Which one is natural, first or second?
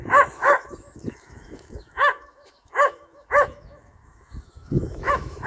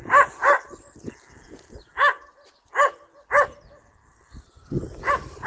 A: second